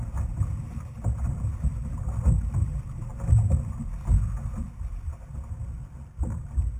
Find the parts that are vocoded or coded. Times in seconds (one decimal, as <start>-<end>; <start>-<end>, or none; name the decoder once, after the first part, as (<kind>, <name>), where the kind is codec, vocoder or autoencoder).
none